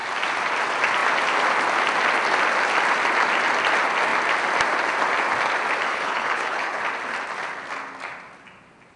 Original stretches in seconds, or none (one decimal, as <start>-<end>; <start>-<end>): 0.0-5.9; 6.8-9.0